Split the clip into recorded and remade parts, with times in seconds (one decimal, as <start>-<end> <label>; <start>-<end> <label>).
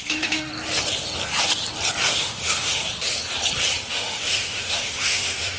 0.0-0.5 remade; 0.5-2.2 recorded; 2.2-2.8 remade; 2.8-3.9 recorded; 3.9-5.6 remade